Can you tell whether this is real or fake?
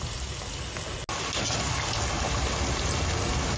real